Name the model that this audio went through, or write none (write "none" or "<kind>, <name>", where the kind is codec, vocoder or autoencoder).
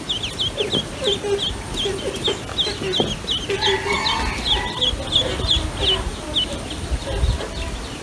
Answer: none